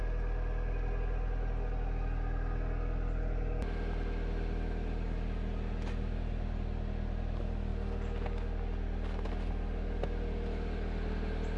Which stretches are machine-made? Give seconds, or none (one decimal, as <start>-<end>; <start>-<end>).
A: none